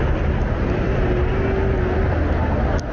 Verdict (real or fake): real